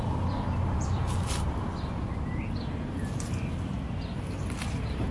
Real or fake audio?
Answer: real